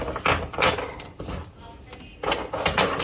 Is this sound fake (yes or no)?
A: no